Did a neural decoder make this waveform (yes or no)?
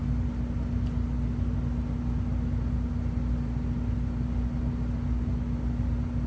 no